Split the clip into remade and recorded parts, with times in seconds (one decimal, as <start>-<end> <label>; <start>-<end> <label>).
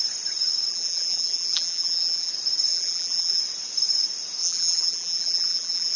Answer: 0.0-0.7 recorded; 0.7-2.3 remade; 2.3-2.7 recorded; 2.7-3.4 remade; 3.4-4.4 recorded; 4.4-6.0 remade